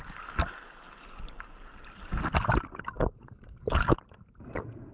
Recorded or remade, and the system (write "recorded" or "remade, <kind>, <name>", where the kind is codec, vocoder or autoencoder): recorded